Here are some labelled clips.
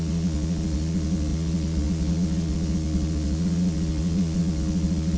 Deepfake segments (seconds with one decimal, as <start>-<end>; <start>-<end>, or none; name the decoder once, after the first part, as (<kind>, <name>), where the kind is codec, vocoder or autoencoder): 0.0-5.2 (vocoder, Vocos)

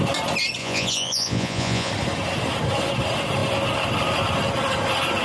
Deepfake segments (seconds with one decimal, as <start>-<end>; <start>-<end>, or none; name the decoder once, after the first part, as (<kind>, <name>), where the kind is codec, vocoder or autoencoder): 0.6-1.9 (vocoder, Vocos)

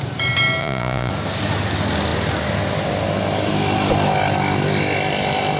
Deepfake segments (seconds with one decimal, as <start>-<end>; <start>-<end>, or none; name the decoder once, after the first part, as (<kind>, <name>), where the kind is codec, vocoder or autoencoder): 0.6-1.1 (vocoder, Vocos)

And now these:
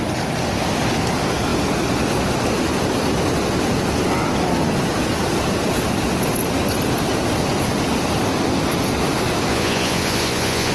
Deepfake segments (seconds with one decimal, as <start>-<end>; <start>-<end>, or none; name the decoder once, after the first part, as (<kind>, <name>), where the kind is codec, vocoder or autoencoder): 9.5-10.7 (vocoder, Vocos)

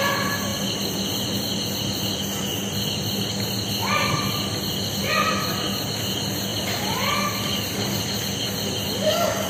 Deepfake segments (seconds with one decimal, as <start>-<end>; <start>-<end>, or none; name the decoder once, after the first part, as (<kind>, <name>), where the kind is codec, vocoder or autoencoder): none